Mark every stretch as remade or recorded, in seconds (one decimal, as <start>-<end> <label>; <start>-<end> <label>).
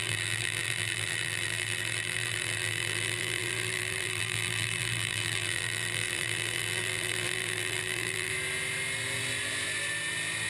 0.0-8.3 remade; 8.3-10.5 recorded